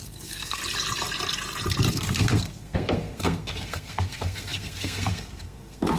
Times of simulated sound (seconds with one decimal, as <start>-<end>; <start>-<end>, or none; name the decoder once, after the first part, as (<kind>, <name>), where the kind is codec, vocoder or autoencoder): 0.0-0.6 (codec, SNAC); 1.9-6.0